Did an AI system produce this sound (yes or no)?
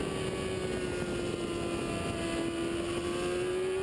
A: no